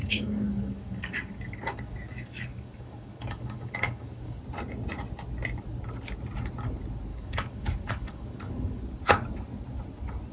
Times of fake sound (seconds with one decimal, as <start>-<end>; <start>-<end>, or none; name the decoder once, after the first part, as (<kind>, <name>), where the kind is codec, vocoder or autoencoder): 0.0-4.4 (codec, DAC); 7.1-8.8